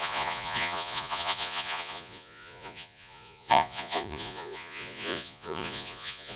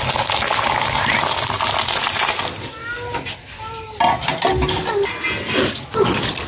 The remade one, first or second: first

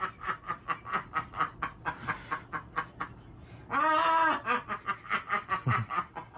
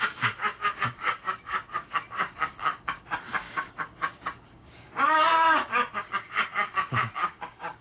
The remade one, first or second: second